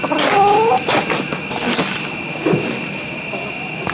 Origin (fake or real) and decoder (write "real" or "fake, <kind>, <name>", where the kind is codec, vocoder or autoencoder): real